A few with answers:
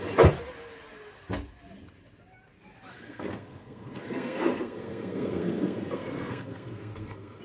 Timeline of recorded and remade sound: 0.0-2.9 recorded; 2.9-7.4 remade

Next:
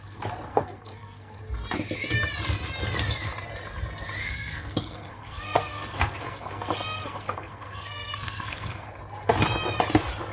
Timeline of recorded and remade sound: 0.0-0.5 recorded; 0.5-1.4 remade; 1.4-4.2 recorded; 4.2-8.9 remade; 8.9-10.3 recorded

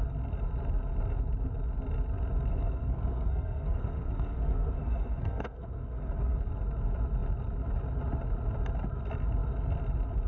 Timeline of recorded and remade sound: 0.0-2.5 recorded; 2.5-6.4 remade; 6.4-10.3 recorded

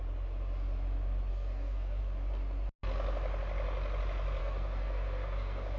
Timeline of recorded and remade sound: 0.0-1.3 recorded; 1.3-2.0 remade; 2.0-4.4 recorded; 4.4-5.8 remade

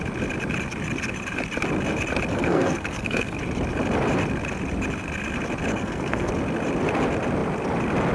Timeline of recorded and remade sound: 0.0-2.3 recorded; 2.3-3.4 remade; 3.4-5.7 recorded; 5.7-6.3 remade; 6.3-8.1 recorded

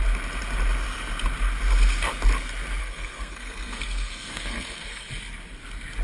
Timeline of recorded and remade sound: 0.0-2.8 recorded; 2.8-5.1 remade; 5.1-6.0 recorded

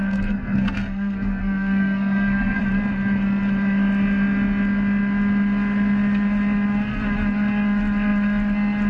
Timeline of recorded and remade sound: 0.0-2.6 remade; 2.6-8.9 recorded